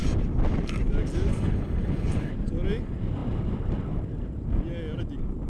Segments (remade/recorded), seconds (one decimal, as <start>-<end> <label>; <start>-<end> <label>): 0.0-1.3 recorded; 1.3-2.3 remade; 2.3-5.5 recorded